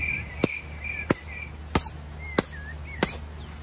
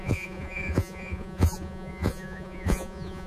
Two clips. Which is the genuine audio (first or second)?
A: first